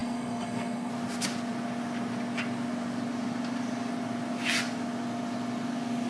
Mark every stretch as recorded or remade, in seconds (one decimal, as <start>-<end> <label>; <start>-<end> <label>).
0.0-0.9 remade; 0.9-6.1 recorded